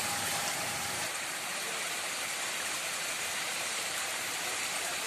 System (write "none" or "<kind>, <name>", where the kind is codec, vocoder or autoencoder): vocoder, BigVGAN v2